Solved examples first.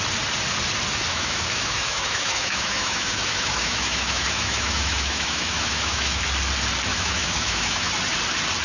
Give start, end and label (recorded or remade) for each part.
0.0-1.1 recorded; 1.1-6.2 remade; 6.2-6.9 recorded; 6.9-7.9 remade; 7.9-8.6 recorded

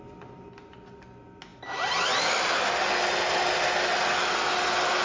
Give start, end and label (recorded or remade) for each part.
0.0-5.0 recorded

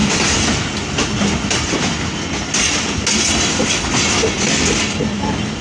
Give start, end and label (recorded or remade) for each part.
0.0-5.6 recorded

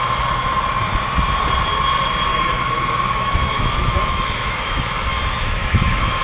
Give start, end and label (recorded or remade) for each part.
0.0-2.3 recorded; 2.3-6.2 remade

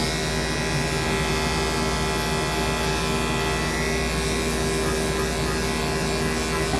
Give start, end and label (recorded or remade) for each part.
0.0-6.8 recorded

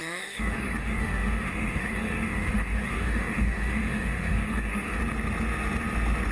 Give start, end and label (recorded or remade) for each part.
0.0-5.0 remade; 5.0-6.3 recorded

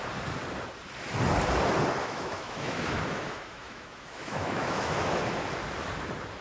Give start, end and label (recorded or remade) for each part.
0.0-2.0 recorded; 2.0-5.2 remade; 5.2-6.4 recorded

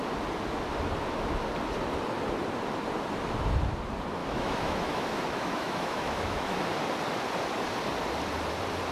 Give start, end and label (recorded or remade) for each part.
0.0-4.2 recorded; 4.2-6.6 remade; 6.6-8.9 recorded